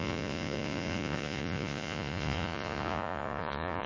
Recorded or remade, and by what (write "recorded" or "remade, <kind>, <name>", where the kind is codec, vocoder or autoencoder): remade, vocoder, Vocos